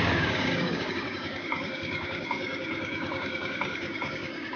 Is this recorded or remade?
remade